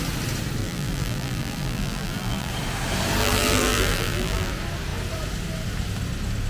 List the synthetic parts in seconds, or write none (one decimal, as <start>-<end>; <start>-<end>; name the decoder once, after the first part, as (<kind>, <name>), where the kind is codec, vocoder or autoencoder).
0.6-2.5 (vocoder, BigVGAN v2); 3.2-4.5